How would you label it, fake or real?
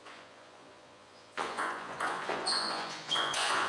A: fake